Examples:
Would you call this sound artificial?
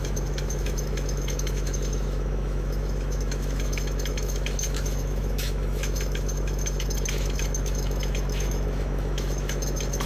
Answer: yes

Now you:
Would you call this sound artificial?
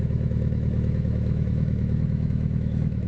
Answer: yes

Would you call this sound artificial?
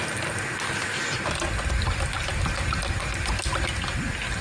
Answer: no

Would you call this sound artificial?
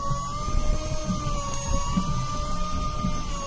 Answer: no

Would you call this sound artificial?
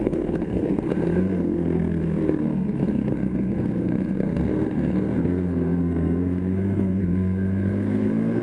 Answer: yes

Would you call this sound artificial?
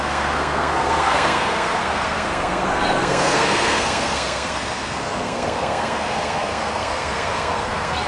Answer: yes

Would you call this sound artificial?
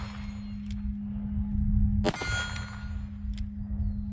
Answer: no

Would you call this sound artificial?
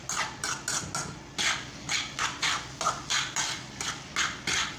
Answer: no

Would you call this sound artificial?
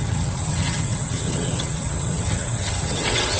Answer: yes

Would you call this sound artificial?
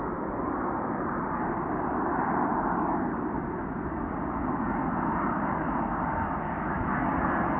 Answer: no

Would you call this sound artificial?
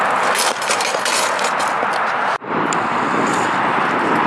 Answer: no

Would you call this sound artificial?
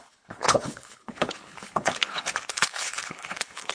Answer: yes